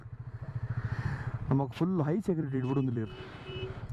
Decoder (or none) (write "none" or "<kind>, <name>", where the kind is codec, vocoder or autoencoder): vocoder, BigVGAN v2